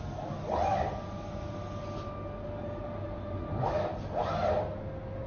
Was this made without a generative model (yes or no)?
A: yes